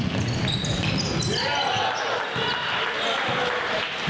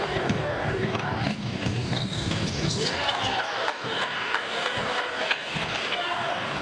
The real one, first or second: first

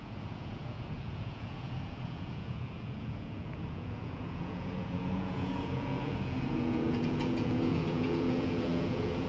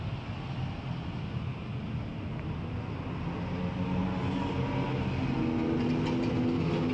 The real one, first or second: second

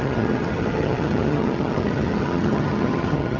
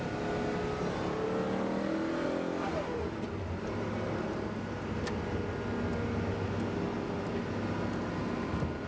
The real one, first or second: second